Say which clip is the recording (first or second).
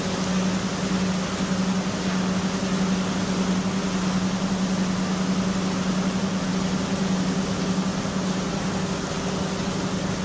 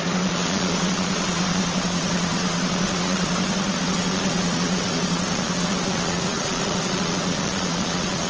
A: first